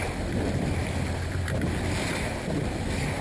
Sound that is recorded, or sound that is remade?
recorded